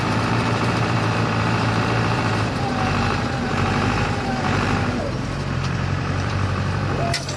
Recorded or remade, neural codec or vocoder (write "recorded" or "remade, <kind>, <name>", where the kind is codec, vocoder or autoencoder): remade, vocoder, BigVGAN v2